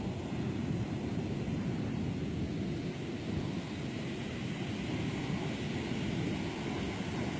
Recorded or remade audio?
recorded